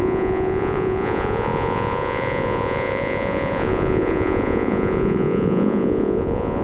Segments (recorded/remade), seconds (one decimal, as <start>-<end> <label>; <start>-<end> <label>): 0.0-6.6 remade